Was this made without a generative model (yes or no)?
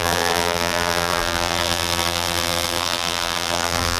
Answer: no